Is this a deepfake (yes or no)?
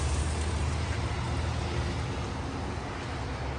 no